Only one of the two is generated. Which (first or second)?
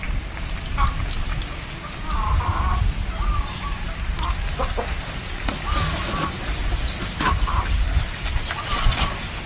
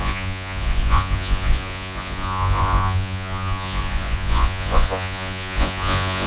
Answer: second